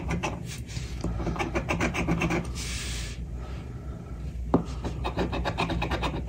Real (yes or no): no